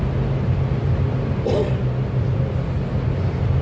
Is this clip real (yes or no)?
yes